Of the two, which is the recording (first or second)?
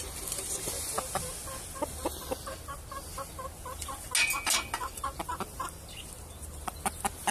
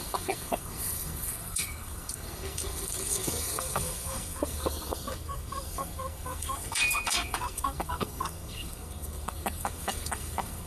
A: first